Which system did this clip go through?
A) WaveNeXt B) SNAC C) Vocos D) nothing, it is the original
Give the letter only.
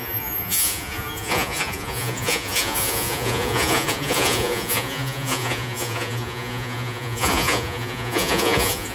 C